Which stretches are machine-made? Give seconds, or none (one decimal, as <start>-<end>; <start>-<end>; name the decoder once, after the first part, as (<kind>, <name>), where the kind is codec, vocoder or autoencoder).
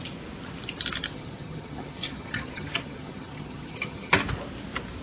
1.1-4.1 (vocoder, HiFi-GAN)